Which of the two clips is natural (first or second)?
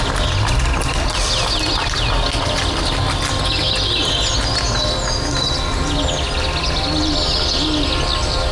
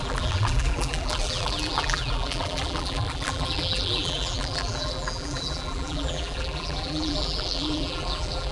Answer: first